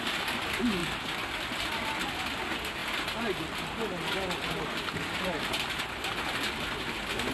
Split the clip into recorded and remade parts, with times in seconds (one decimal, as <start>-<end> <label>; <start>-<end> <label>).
0.0-7.3 recorded